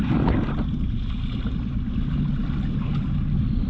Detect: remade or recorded recorded